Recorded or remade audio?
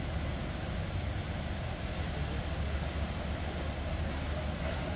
recorded